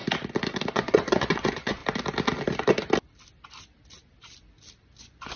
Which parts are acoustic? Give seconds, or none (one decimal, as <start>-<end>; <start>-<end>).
0.0-0.7; 1.8-5.0